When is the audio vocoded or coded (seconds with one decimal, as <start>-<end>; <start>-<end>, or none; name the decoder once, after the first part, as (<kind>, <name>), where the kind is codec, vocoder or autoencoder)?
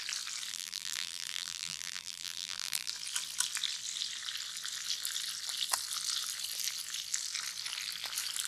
0.5-2.9 (vocoder, BigVGAN v2)